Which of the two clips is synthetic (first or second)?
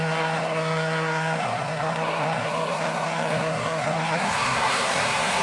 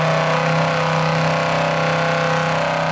first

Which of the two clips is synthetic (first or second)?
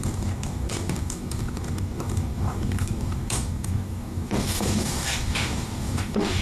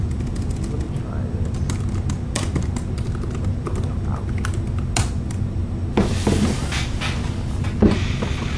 first